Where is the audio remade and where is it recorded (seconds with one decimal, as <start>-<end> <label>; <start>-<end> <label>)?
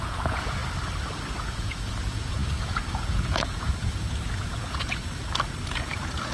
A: 0.0-0.6 remade; 0.6-1.4 recorded; 1.4-5.0 remade; 5.0-5.7 recorded; 5.7-6.3 remade